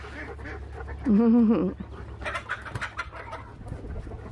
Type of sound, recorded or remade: recorded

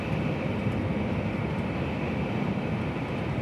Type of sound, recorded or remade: recorded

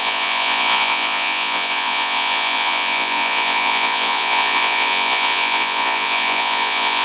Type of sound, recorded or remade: remade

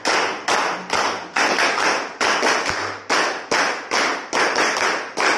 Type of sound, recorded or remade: recorded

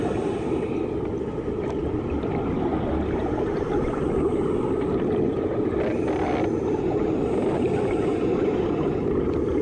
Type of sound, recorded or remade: recorded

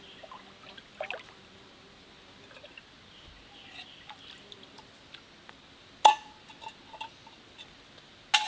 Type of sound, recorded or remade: recorded